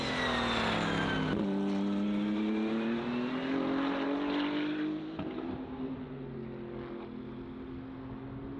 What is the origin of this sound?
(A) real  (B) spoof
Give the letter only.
A